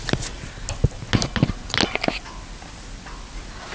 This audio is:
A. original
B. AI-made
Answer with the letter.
A